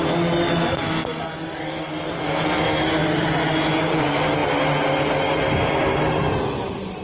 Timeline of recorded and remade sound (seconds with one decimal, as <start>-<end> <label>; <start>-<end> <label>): 0.0-1.1 recorded; 1.1-1.9 remade; 1.9-7.0 recorded